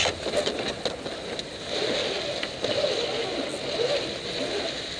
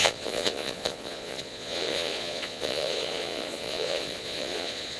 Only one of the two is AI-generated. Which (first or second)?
second